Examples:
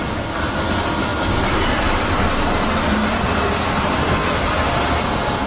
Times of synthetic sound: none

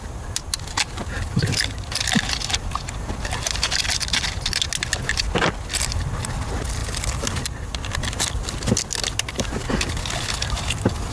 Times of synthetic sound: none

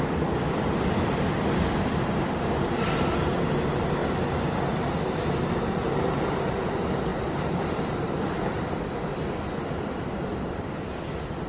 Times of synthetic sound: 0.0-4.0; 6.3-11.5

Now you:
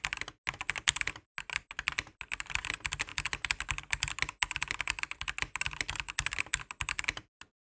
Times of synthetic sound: none